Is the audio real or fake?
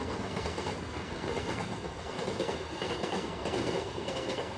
fake